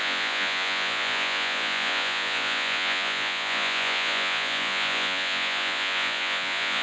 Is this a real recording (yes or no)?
no